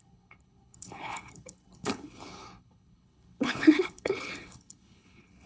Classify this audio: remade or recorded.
remade